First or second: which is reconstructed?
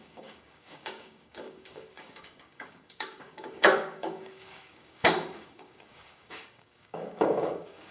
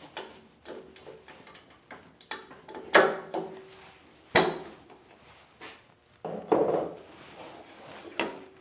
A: first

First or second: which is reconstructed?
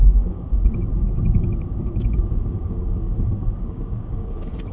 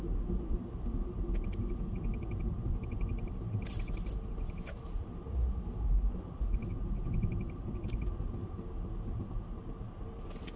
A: first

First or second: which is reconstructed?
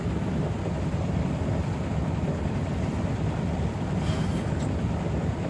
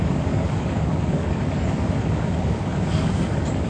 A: second